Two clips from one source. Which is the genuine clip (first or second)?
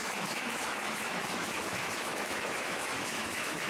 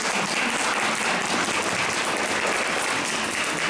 second